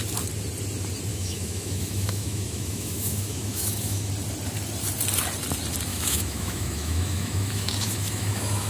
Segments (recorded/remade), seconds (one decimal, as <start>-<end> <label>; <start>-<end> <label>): 0.0-1.1 recorded; 1.1-4.1 remade; 4.1-5.9 recorded; 5.9-8.7 remade